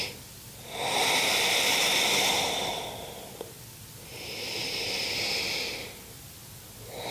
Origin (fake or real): real